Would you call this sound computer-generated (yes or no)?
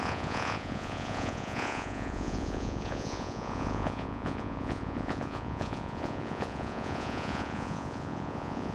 yes